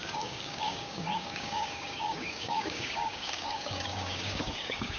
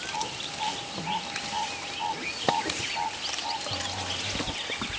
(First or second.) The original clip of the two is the second